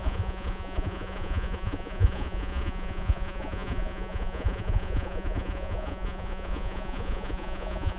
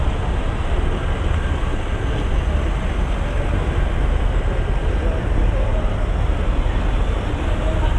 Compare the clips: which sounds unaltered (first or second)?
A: second